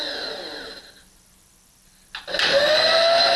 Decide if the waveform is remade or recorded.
recorded